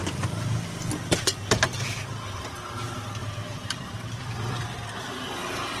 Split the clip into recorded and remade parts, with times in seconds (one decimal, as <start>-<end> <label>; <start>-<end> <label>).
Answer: 0.0-3.2 recorded; 3.2-4.6 remade; 4.6-5.8 recorded